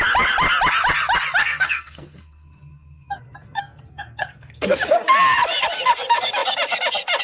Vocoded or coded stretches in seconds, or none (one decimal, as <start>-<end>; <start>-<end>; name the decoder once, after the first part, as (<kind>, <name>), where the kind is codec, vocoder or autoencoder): 1.4-4.8 (codec, SNAC)